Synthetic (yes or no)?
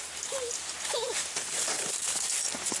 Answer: no